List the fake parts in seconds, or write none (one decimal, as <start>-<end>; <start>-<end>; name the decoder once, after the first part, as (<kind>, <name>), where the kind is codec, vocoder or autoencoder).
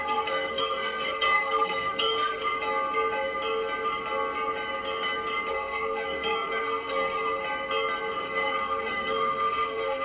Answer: 0.0-2.4 (codec, SNAC); 5.5-7.4; 8.2-10.0